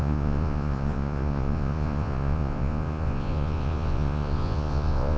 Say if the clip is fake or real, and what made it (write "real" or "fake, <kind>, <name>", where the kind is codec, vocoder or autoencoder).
fake, vocoder, Vocos